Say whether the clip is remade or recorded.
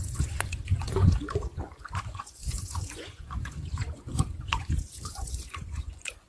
remade